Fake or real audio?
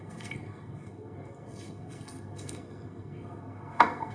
fake